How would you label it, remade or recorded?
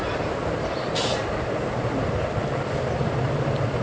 recorded